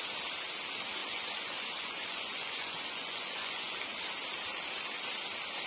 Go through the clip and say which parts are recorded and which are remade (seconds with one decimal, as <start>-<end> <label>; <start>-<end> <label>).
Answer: 0.0-1.0 recorded; 1.0-3.8 remade; 3.8-5.7 recorded